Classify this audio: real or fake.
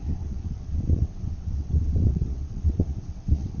fake